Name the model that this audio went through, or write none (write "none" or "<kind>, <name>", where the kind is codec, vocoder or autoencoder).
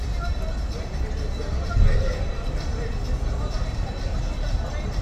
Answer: none